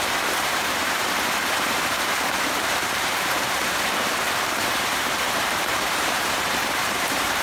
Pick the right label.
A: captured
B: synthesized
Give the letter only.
B